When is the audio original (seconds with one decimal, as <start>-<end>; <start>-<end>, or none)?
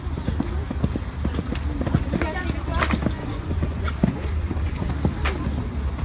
0.0-3.2; 4.9-6.0